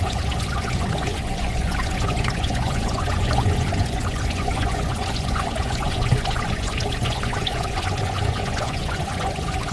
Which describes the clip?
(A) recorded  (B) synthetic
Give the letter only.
B